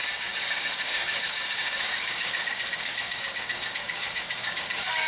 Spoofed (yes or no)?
yes